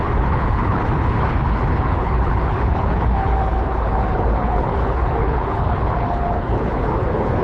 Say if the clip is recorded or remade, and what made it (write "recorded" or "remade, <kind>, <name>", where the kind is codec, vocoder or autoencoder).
remade, codec, HILCodec